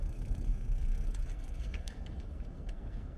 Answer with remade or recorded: remade